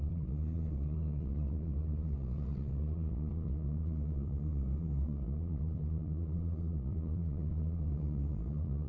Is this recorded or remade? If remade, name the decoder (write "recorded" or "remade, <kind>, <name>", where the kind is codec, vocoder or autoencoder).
remade, vocoder, Vocos